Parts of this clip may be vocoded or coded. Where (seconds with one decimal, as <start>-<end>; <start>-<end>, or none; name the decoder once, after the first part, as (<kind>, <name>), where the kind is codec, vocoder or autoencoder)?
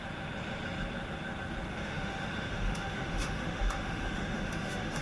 1.7-5.0 (autoencoder, DAC-VAE)